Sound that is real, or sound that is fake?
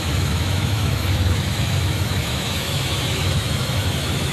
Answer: fake